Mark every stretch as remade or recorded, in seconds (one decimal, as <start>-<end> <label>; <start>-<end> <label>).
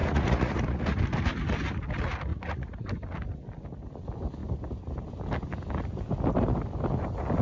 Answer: 0.0-1.0 remade; 1.0-2.3 recorded; 2.3-2.9 remade; 2.9-7.4 recorded